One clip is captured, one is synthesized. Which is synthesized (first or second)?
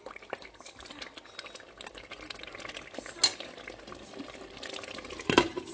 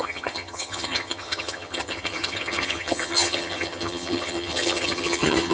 second